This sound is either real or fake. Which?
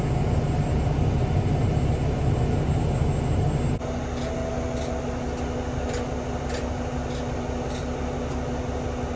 real